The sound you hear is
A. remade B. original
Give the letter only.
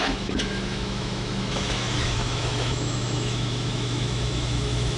A